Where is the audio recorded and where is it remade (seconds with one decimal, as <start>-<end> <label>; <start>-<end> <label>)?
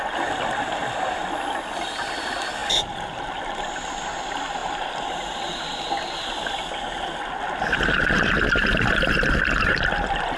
0.0-10.4 recorded